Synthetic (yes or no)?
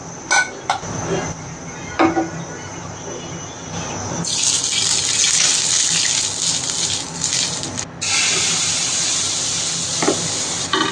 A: no